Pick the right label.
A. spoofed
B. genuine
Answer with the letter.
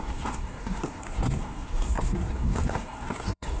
A